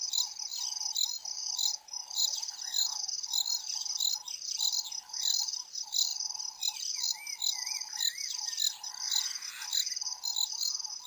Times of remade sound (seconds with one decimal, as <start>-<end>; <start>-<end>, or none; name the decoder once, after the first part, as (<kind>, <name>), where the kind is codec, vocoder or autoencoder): none